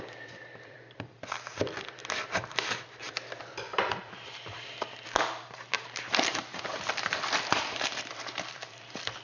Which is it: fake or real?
fake